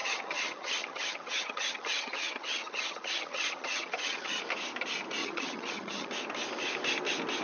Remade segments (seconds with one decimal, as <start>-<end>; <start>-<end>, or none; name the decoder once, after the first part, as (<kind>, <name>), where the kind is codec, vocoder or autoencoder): 0.0-4.4 (vocoder, HiFi-GAN); 5.2-6.1

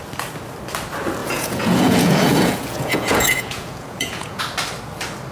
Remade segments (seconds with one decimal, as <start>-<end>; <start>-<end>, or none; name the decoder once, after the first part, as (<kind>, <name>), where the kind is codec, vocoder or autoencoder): 1.2-4.4 (vocoder, Vocos)

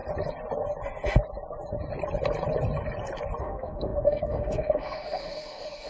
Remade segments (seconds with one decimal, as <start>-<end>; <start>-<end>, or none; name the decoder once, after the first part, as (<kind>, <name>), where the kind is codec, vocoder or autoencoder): 3.4-5.9 (autoencoder, DAC-VAE)

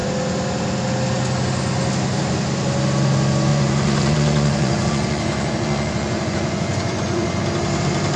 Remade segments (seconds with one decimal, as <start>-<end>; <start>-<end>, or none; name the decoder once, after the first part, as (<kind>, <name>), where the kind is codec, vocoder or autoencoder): 3.5-7.4 (vocoder, Vocos)

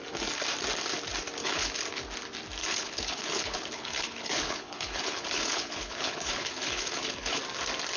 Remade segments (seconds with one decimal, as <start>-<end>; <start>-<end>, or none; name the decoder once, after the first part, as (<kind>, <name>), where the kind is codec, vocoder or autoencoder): 1.4-2.0 (codec, HILCodec); 2.6-7.4